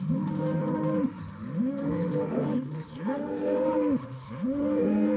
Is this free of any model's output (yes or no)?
no